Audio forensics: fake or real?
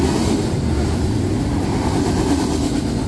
real